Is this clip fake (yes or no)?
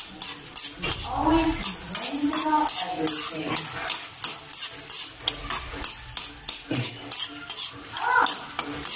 no